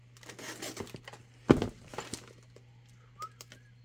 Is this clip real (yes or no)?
yes